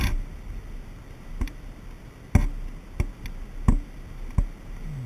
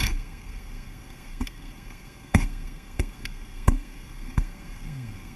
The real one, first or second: first